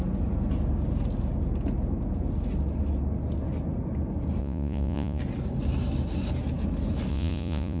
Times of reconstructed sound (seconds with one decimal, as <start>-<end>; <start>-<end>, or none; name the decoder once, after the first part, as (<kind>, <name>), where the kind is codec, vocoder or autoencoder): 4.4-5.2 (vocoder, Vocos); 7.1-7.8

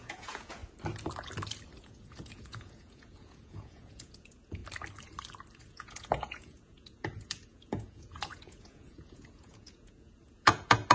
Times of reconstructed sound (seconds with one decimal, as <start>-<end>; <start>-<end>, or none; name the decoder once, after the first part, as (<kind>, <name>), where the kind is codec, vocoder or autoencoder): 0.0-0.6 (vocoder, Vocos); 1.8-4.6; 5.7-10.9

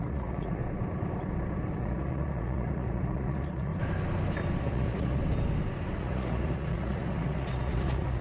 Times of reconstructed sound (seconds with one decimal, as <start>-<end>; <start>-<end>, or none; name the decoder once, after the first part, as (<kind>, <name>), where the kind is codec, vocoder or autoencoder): 0.0-0.6 (vocoder, Vocos); 1.8-3.7; 4.6-5.2; 6.0-8.2

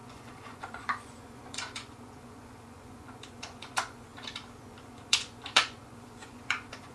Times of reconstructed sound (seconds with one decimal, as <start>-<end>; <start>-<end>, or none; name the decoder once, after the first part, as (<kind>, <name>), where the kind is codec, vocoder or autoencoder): 0.0-4.1 (vocoder, Vocos); 4.6-6.9

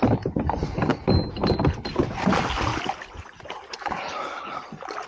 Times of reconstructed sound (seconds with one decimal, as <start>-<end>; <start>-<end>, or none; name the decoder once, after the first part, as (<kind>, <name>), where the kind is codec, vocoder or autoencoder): none

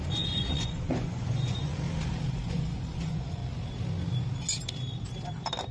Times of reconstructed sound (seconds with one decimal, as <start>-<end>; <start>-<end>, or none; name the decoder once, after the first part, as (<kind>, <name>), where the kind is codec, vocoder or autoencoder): 0.0-1.7 (vocoder, Vocos); 2.3-3.4

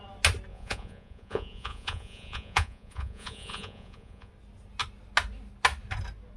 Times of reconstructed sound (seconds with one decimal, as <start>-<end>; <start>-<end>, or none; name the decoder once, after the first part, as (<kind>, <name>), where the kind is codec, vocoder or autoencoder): 0.5-4.3 (vocoder, Vocos)

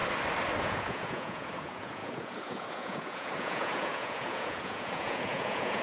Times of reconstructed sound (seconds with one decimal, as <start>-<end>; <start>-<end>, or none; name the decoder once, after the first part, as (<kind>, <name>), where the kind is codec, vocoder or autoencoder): 0.6-5.8 (vocoder, Vocos)